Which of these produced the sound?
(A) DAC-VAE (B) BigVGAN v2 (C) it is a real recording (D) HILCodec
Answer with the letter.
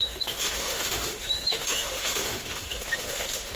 A